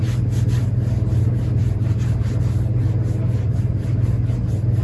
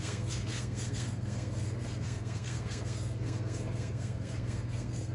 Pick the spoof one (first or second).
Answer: second